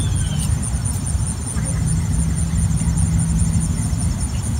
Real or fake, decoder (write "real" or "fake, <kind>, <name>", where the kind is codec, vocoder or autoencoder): real